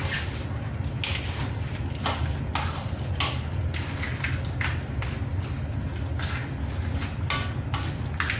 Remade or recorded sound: recorded